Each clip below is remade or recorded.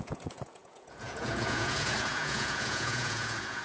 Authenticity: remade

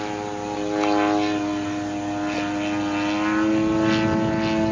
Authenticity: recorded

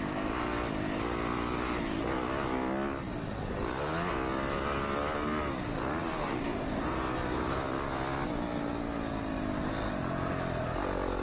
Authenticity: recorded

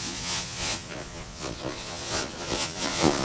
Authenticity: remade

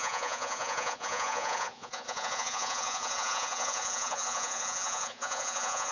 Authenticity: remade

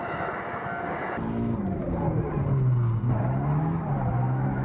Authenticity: recorded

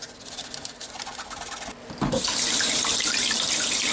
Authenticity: recorded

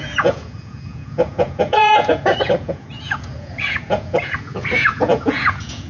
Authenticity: remade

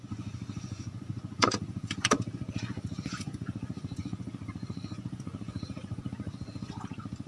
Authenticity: remade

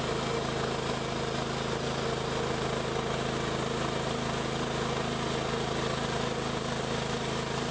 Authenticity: recorded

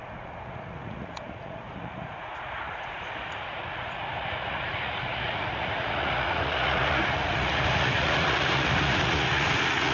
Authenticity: remade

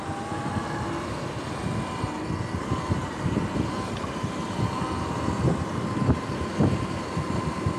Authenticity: recorded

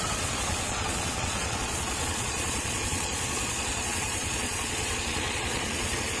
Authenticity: remade